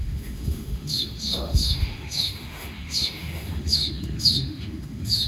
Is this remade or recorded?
remade